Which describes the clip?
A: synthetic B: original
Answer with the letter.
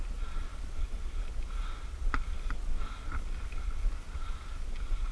B